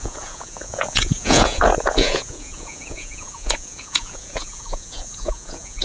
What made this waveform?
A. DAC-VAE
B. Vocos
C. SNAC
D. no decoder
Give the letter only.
B